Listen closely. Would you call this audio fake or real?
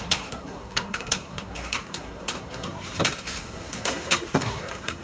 fake